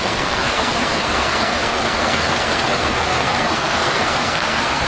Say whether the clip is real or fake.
fake